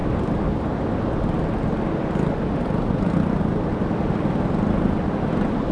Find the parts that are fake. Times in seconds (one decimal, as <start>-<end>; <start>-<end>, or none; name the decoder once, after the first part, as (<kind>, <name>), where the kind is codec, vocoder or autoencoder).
none